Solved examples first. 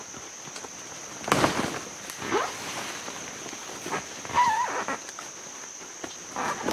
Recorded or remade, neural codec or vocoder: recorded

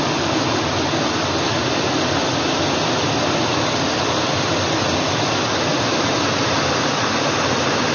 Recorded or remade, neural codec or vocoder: recorded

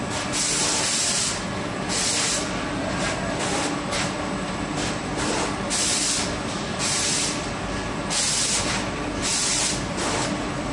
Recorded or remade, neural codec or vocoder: remade, vocoder, BigVGAN v2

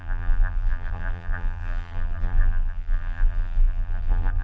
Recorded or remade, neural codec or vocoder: remade, vocoder, BigVGAN v2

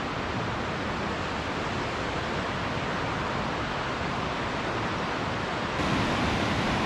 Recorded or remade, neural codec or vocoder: recorded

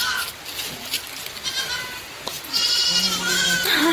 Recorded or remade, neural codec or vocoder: recorded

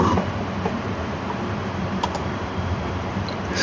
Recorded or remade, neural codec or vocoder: remade, vocoder, BigVGAN v2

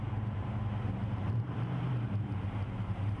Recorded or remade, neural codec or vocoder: remade, vocoder, BigVGAN v2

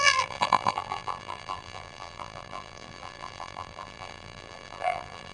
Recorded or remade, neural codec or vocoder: remade, vocoder, BigVGAN v2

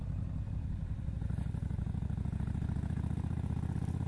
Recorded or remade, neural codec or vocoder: remade, vocoder, BigVGAN v2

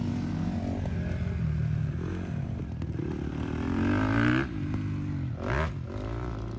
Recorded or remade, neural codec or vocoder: recorded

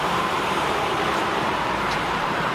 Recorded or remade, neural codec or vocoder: remade, vocoder, BigVGAN v2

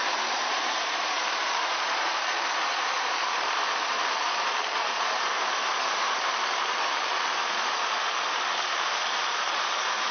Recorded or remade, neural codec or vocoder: remade, vocoder, BigVGAN v2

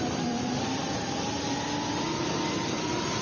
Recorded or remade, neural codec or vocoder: remade, vocoder, BigVGAN v2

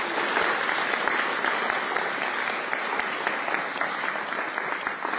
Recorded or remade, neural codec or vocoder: recorded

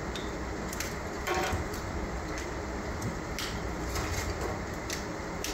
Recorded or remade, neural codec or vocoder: recorded